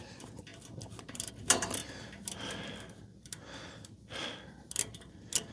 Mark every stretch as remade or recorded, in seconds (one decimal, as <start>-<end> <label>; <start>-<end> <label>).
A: 0.0-5.5 recorded